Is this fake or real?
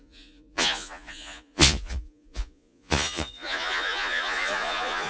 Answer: fake